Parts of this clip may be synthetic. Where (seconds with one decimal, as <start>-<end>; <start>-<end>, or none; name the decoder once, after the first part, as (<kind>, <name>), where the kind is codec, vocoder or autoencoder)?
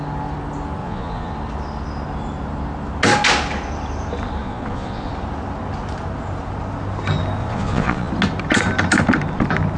0.8-1.3 (vocoder, Vocos); 4.4-5.1; 7.4-8.1